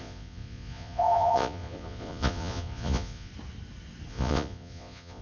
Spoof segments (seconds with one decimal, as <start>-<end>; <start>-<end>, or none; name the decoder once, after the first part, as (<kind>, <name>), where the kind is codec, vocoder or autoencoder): 0.0-3.3 (vocoder, Vocos); 4.1-5.2